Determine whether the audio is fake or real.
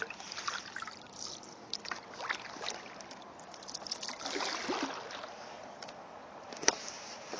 real